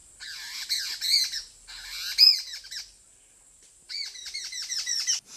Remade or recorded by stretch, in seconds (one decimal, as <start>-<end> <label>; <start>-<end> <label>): 0.0-5.4 recorded